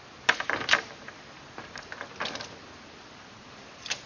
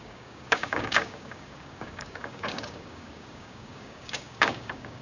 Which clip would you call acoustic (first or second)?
first